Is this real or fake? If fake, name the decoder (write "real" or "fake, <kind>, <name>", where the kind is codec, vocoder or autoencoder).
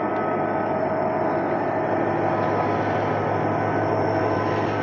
real